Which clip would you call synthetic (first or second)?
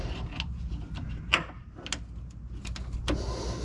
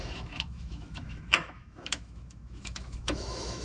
second